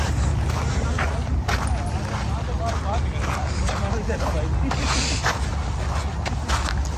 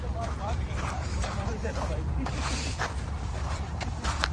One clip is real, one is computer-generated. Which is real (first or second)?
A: first